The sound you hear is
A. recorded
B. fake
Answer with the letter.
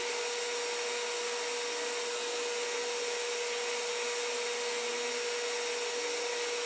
A